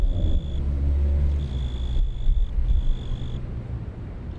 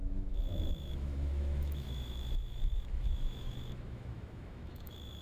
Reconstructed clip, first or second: second